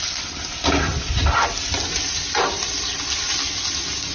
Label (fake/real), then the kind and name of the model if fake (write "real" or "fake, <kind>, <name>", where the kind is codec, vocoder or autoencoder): real